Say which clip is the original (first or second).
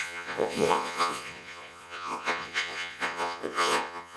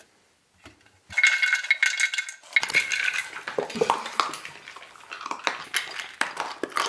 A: second